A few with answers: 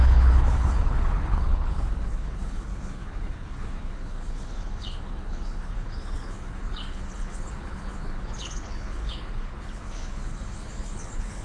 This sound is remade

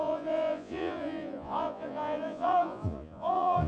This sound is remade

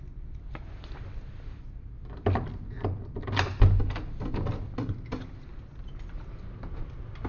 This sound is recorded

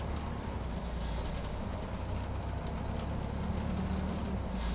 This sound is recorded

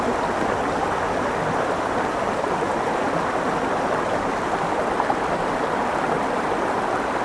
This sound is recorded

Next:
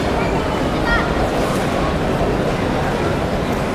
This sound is remade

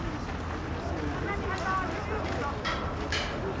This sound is recorded